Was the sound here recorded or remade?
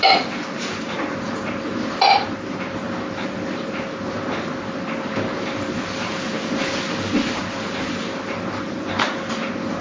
recorded